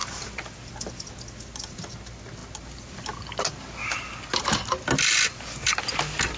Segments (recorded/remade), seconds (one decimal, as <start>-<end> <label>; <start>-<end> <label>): 0.0-6.4 recorded